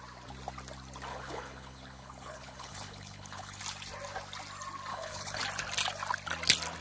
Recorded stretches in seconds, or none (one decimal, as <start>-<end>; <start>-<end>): 0.0-1.1; 3.6-4.9; 5.4-6.8